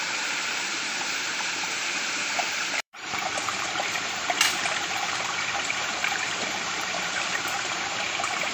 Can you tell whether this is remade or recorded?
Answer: remade